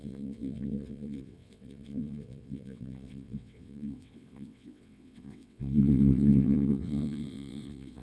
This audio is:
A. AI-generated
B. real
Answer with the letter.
A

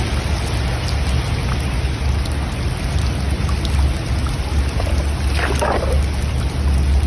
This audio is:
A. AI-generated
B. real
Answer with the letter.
B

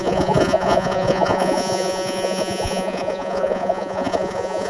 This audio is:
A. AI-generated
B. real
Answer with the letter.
A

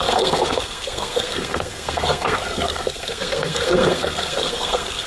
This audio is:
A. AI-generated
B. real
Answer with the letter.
A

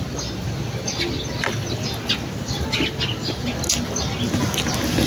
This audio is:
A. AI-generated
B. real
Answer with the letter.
B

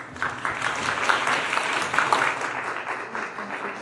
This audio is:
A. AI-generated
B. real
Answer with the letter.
B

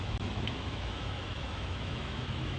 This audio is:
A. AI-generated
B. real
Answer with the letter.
A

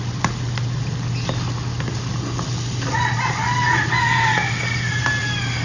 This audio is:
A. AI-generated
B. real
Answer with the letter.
B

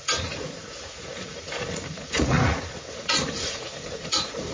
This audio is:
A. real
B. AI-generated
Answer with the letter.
B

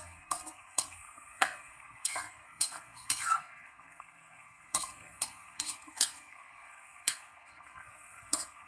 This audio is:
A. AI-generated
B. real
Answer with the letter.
A